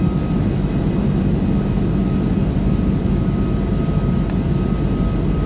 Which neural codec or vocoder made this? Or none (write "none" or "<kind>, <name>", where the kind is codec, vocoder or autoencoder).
none